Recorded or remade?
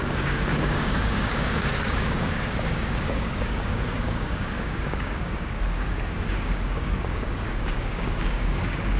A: remade